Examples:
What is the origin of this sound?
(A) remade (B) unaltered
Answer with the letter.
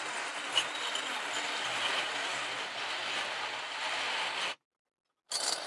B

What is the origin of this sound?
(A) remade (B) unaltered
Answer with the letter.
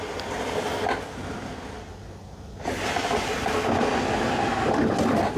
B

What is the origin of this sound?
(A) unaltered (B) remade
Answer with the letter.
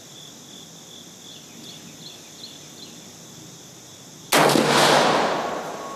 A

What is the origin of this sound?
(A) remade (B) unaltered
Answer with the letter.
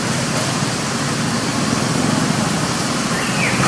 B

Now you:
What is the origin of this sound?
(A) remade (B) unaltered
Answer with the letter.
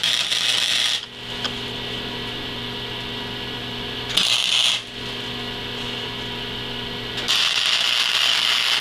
B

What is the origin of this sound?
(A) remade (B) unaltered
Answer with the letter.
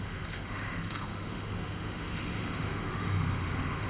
A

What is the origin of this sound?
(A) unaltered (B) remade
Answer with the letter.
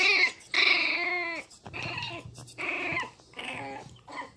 A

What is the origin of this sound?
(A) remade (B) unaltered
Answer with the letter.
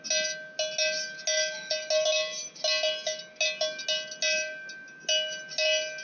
B